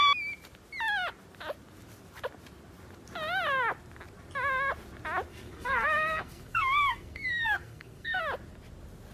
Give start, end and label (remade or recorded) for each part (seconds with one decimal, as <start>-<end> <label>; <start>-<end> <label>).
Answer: 0.0-5.3 recorded; 5.3-8.2 remade; 8.2-9.1 recorded

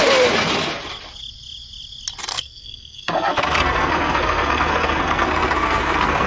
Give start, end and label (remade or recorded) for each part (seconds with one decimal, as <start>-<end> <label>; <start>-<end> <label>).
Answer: 0.0-2.3 recorded; 2.3-6.3 remade

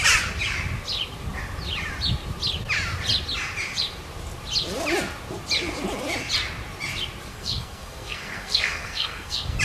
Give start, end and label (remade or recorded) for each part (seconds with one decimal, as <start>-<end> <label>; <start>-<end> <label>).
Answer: 0.0-7.3 recorded; 7.3-9.6 remade